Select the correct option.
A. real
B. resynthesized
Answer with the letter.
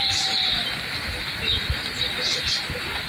A